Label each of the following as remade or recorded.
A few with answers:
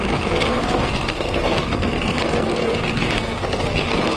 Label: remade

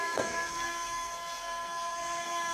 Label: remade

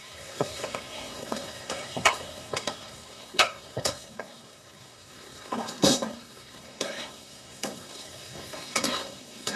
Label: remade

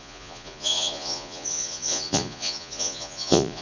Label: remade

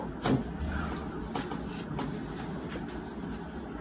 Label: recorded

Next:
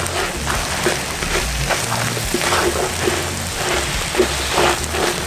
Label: recorded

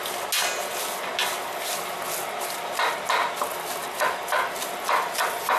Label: recorded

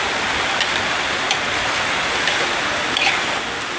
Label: recorded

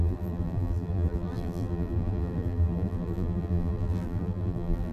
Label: remade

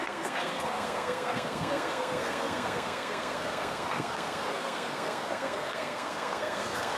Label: remade